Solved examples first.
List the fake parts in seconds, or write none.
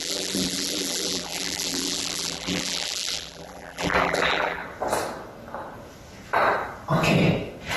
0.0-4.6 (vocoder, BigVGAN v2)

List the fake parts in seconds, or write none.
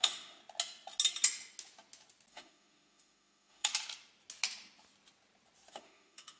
0.0-0.4 (autoencoder, DAC-VAE); 2.3-3.7; 5.7-6.4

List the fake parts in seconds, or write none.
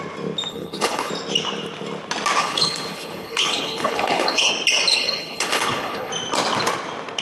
0.5-1.1 (codec, HILCodec); 2.4-4.5; 4.9-6.1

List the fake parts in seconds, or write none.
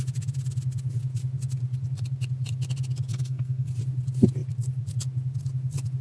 3.1-3.7 (codec, SNAC)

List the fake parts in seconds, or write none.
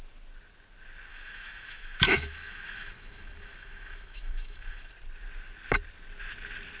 1.1-4.9 (autoencoder, DAC-VAE)